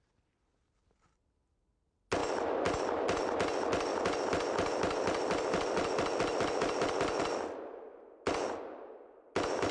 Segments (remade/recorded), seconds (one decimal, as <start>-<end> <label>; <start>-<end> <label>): 0.0-3.9 recorded; 3.9-7.2 remade; 7.2-9.7 recorded

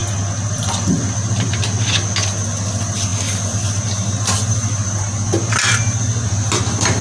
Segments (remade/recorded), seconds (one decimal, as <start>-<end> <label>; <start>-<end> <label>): 0.0-7.0 recorded

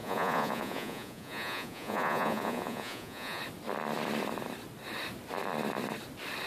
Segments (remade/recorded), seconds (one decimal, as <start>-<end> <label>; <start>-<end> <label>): 0.0-3.4 remade; 3.4-6.5 recorded